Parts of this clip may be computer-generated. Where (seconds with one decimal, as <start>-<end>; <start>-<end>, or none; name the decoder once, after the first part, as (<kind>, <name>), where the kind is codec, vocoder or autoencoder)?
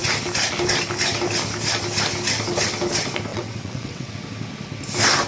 3.3-4.1 (vocoder, WaveNeXt)